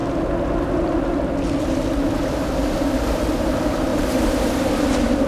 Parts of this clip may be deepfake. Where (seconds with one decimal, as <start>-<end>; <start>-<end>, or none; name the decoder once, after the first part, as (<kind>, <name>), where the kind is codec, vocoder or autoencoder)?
3.9-5.3 (vocoder, BigVGAN v2)